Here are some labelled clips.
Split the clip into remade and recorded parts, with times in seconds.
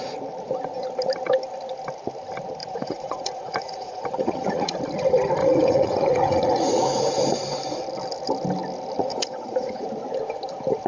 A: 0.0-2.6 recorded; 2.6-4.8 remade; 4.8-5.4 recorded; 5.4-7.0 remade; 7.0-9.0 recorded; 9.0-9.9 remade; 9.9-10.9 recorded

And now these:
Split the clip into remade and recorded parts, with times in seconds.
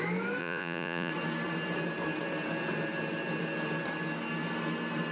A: 0.0-0.4 recorded; 0.4-1.1 remade; 1.1-5.1 recorded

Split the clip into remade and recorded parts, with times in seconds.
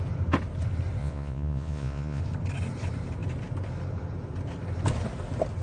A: 0.0-1.0 recorded; 1.0-2.2 remade; 2.2-5.6 recorded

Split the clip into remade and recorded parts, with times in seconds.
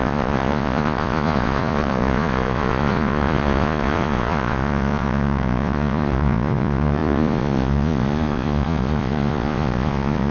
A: 0.0-10.3 remade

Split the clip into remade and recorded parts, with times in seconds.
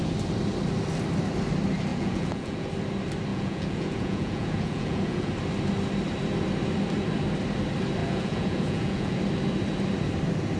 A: 0.0-1.9 recorded; 1.9-2.7 remade; 2.7-3.3 recorded; 3.3-5.3 remade; 5.3-8.0 recorded; 8.0-9.2 remade; 9.2-10.6 recorded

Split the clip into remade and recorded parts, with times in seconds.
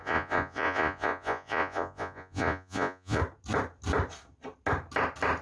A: 0.0-3.2 remade; 3.2-5.4 recorded